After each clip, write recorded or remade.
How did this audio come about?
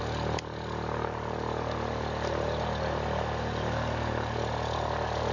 recorded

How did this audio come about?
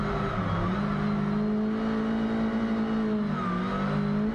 recorded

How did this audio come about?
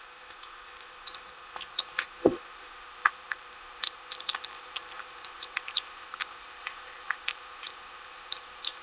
remade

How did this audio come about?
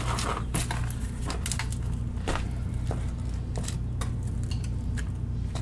recorded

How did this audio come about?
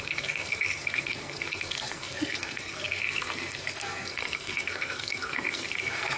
remade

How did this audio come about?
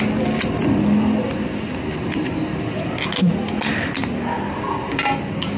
recorded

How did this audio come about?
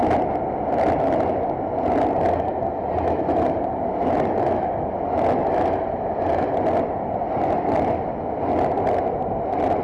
recorded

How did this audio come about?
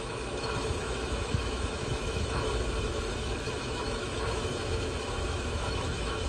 remade